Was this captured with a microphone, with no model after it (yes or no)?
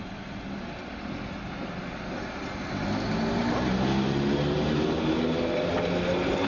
yes